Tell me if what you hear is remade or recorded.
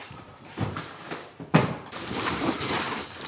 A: remade